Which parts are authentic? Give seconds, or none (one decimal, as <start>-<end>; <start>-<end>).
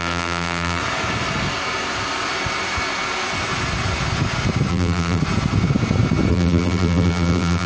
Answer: 0.8-4.7; 5.2-6.3